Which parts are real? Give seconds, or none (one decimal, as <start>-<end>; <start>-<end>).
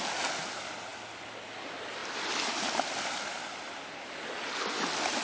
0.0-5.2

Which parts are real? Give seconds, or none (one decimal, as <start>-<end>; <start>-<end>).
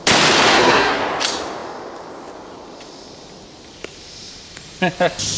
0.0-0.5; 1.0-5.4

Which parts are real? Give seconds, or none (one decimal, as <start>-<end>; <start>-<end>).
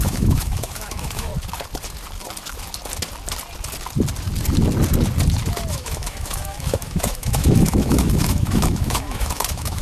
1.3-5.7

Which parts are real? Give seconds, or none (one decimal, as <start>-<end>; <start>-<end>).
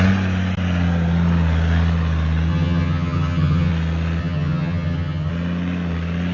0.0-2.5; 3.7-4.2; 5.3-6.3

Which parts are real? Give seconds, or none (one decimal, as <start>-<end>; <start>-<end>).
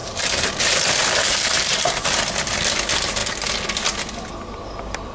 0.5-1.0; 2.0-5.1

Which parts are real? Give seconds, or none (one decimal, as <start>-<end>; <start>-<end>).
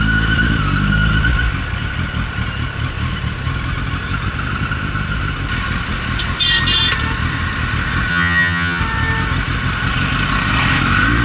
0.0-8.1; 8.8-11.2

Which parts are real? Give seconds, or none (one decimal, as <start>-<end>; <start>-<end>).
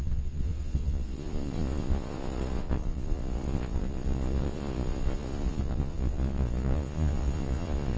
none